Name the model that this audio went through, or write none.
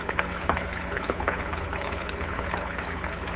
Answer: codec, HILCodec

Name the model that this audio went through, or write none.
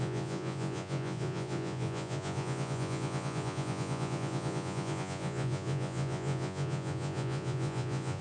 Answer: vocoder, Vocos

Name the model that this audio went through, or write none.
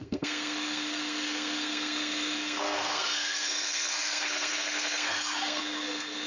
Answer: codec, SNAC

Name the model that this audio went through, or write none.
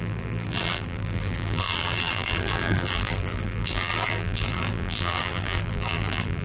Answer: vocoder, BigVGAN v2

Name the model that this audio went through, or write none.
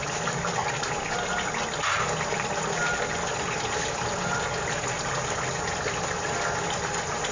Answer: none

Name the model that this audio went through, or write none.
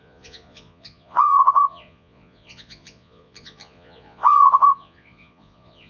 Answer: vocoder, Vocos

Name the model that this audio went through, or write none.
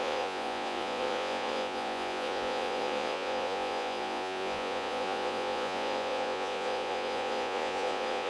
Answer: vocoder, Vocos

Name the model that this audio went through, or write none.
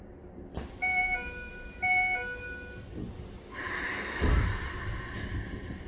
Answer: none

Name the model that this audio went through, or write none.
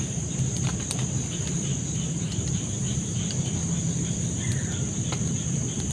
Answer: vocoder, BigVGAN v2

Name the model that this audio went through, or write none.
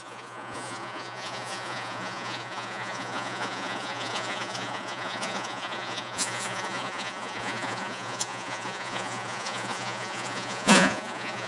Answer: vocoder, Vocos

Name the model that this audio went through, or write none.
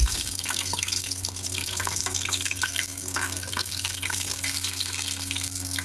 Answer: codec, SNAC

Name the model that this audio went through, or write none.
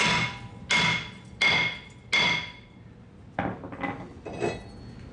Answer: none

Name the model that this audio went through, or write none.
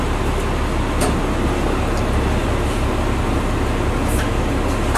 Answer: none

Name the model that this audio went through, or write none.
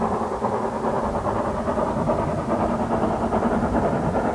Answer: none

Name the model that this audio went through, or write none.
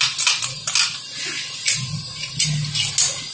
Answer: none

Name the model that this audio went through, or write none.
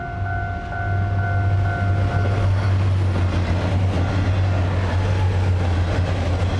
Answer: none